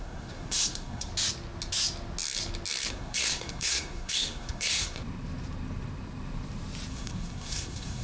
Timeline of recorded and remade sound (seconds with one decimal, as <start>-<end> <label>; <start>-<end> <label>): 0.0-1.1 remade; 1.1-2.9 recorded; 2.9-5.0 remade; 5.0-6.9 recorded; 6.9-8.0 remade